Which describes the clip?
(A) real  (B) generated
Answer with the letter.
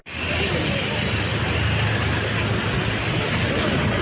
A